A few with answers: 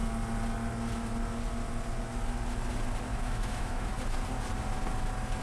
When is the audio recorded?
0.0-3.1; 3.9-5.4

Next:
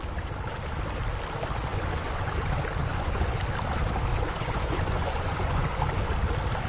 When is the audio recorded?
0.0-1.7; 2.3-2.8; 3.4-4.1; 5.8-6.7

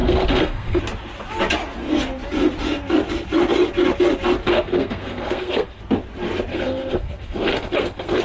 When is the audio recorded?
0.8-4.4; 5.8-6.5